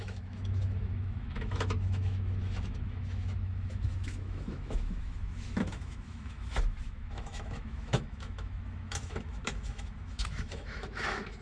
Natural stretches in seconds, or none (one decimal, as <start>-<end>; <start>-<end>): none